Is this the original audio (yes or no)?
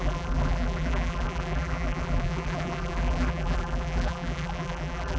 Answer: no